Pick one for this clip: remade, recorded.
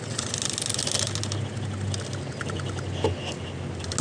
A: recorded